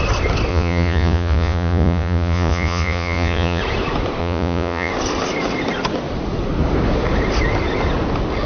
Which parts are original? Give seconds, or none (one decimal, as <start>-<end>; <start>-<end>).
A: 0.0-0.5; 3.6-4.2; 4.9-8.5

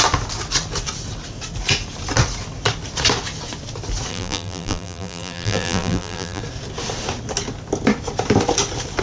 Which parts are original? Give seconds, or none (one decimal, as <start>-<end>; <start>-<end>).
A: 0.0-4.1; 6.4-9.0